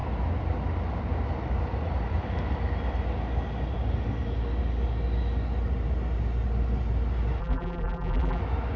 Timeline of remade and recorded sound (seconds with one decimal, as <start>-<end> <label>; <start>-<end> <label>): 0.0-7.4 recorded; 7.4-8.4 remade; 8.4-8.8 recorded